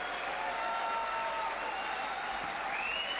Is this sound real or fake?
real